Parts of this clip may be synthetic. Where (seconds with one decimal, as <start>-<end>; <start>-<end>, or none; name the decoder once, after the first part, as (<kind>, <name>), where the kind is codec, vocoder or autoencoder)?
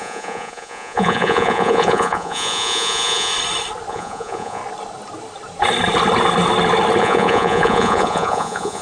0.0-3.3 (vocoder, Vocos); 3.9-4.6; 7.0-8.8